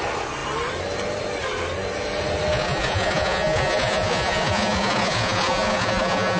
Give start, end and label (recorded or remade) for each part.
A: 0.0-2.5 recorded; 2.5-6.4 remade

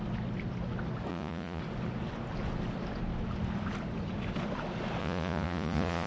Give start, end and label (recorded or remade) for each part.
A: 0.0-1.1 recorded; 1.1-1.6 remade; 1.6-5.0 recorded; 5.0-6.1 remade

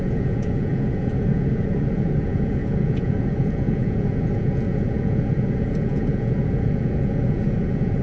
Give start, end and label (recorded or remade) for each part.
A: 0.0-8.0 remade

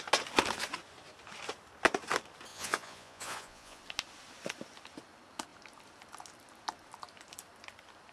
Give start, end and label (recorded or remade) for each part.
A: 0.0-2.5 recorded; 2.5-3.8 remade; 3.8-8.1 recorded